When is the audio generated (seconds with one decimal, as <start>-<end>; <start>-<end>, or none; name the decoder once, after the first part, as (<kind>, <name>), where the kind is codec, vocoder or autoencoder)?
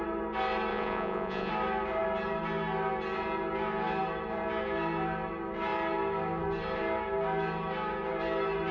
0.7-1.5 (vocoder, Vocos)